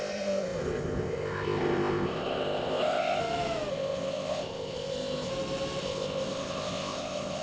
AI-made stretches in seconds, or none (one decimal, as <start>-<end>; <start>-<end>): 0.0-3.2; 3.7-5.3; 5.8-7.4